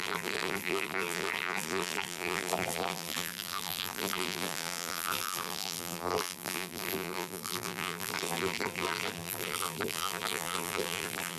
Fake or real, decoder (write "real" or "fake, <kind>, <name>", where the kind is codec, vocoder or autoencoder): fake, vocoder, BigVGAN v2